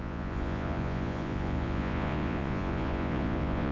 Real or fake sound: fake